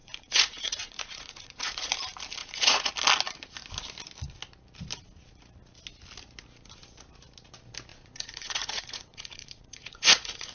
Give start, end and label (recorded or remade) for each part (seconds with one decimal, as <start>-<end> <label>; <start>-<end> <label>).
0.0-1.9 remade; 1.9-2.4 recorded; 2.4-2.9 remade; 2.9-7.9 recorded; 7.9-10.5 remade